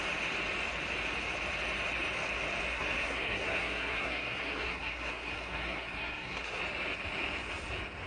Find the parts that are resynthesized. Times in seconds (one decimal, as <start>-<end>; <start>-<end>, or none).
2.7-6.6